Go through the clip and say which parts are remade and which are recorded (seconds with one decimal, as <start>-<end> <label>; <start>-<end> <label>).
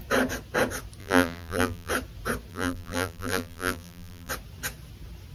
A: 0.0-1.0 recorded; 1.0-1.9 remade; 1.9-2.5 recorded; 2.5-4.3 remade; 4.3-5.3 recorded